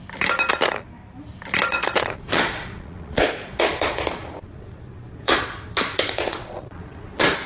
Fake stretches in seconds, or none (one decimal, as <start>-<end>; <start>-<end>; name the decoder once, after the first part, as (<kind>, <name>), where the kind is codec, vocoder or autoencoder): 1.7-5.5 (vocoder, Vocos); 5.9-7.5